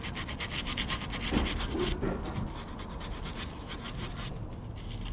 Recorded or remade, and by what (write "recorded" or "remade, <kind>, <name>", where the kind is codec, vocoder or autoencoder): recorded